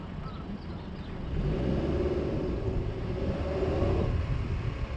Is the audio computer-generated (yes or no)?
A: no